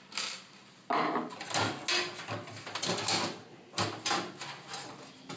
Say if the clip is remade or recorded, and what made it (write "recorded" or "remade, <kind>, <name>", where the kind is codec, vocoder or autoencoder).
recorded